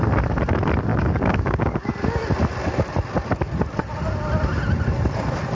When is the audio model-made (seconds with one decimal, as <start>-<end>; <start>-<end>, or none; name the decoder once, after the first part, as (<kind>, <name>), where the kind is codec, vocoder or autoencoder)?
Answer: 0.9-1.9 (codec, DAC)